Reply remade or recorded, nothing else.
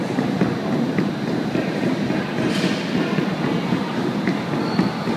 recorded